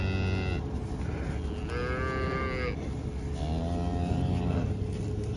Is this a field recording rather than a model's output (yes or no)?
yes